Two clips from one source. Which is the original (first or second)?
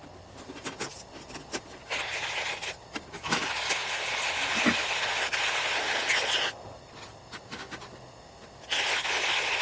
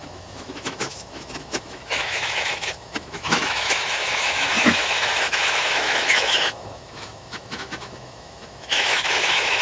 first